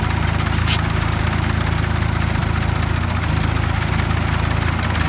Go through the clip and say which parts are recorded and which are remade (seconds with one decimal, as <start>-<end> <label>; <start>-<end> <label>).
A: 0.0-0.6 recorded; 0.6-1.2 remade; 1.2-5.1 recorded